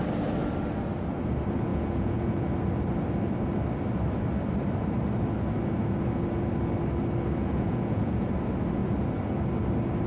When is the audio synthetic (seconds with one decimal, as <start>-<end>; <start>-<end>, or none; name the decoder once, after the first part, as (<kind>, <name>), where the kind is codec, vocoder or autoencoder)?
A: 1.7-2.5 (vocoder, Vocos); 7.4-8.3